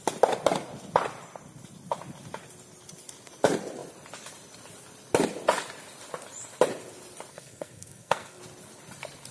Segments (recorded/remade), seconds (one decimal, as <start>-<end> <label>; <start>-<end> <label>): 0.0-7.3 recorded; 7.3-8.4 remade; 8.4-9.3 recorded

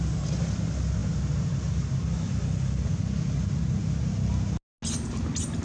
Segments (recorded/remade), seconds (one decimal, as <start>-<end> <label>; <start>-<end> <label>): 0.0-5.6 recorded

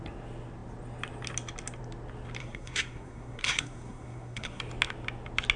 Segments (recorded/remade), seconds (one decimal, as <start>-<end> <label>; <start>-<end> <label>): 0.0-2.4 recorded; 2.4-4.6 remade; 4.6-5.6 recorded